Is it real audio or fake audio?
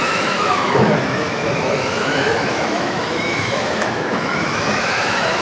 fake